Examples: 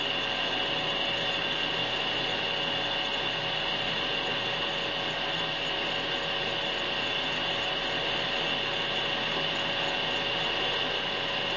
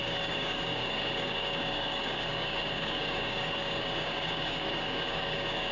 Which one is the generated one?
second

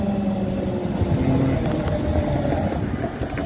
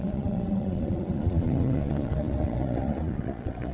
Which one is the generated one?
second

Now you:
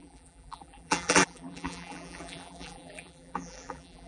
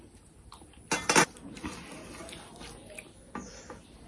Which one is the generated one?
first